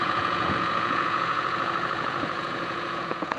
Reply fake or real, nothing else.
fake